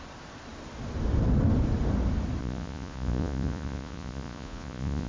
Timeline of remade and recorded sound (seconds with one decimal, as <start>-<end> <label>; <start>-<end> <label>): 0.0-2.4 recorded; 2.4-5.1 remade